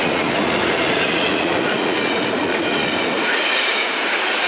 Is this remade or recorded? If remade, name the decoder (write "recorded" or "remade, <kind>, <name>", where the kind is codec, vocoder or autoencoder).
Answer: remade, vocoder, Vocos